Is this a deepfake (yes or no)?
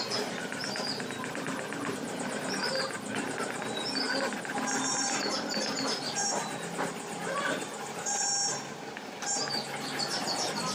no